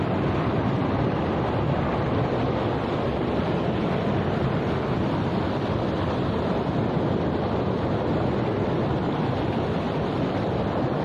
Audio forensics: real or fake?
real